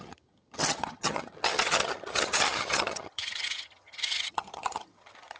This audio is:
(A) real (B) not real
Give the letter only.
B